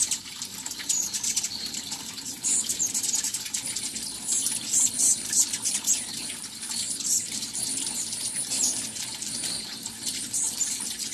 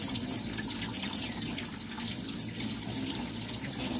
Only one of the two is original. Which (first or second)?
second